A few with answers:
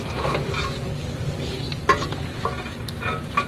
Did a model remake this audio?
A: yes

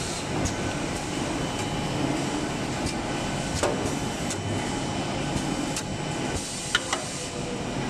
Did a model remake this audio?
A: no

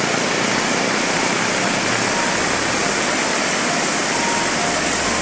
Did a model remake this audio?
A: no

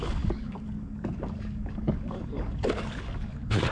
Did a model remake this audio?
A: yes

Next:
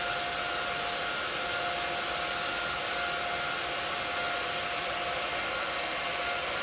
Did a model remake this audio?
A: no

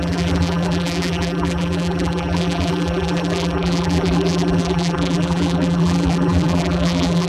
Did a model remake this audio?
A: yes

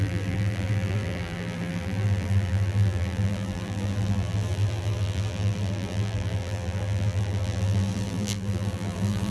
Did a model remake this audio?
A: yes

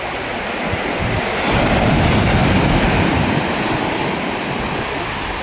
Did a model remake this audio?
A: no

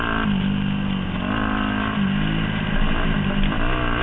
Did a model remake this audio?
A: no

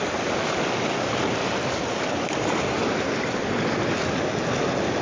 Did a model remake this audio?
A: no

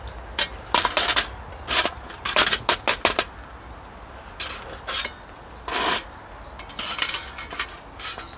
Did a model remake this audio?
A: no